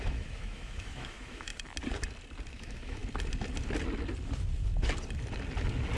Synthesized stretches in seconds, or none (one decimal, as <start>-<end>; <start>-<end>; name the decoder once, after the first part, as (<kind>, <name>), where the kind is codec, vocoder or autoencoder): 0.0-1.5 (autoencoder, DAC-VAE); 2.5-3.0